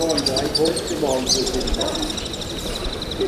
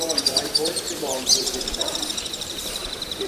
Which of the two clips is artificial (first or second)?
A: second